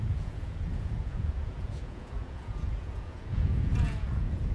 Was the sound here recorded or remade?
remade